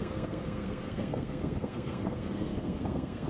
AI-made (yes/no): yes